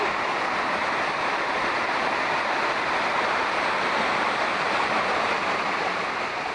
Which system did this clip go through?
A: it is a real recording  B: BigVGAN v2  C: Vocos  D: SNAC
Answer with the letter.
A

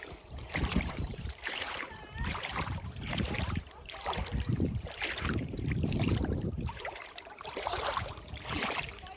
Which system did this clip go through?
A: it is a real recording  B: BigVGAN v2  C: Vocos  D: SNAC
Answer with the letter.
B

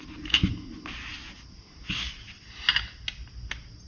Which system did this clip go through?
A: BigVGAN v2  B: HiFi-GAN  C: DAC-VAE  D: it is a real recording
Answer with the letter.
D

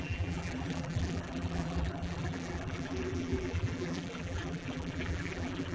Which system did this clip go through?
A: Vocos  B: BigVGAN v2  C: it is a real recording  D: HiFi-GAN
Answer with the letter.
B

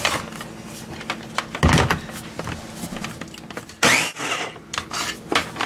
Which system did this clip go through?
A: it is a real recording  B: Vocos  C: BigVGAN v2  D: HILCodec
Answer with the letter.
A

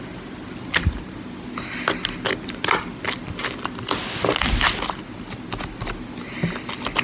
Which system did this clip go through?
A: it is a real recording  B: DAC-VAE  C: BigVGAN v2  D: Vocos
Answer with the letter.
A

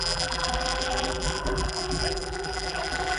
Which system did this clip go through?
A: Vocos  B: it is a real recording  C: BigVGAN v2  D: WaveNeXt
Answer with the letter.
C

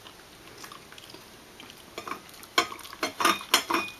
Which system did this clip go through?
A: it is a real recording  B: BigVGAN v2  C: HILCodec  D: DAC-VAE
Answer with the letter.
A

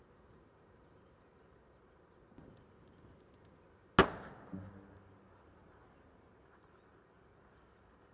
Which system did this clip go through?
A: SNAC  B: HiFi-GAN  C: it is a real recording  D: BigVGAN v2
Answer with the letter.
C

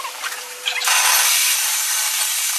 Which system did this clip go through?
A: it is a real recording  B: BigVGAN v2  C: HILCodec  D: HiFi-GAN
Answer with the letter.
B